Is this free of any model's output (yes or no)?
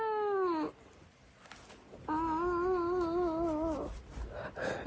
yes